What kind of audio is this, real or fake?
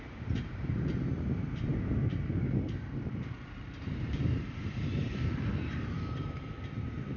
fake